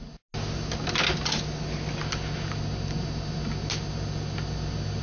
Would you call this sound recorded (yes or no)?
yes